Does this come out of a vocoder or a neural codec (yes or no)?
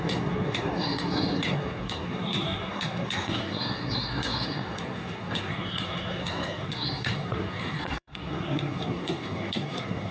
yes